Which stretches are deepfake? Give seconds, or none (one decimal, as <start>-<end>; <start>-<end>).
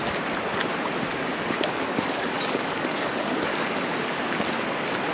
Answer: 1.1-4.2